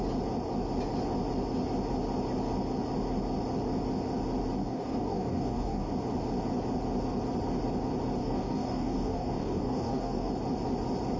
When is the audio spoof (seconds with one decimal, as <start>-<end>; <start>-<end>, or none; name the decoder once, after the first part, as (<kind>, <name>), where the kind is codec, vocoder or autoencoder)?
4.6-5.9 (codec, DAC); 8.2-10.3